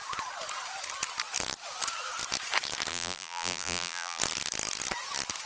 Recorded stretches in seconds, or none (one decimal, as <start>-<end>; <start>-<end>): 0.0-2.9; 4.2-5.5